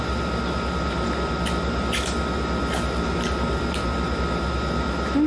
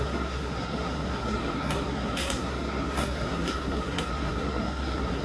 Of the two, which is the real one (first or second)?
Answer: first